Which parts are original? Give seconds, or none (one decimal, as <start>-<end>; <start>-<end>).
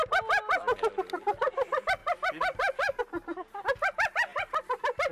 0.0-2.0; 3.0-4.3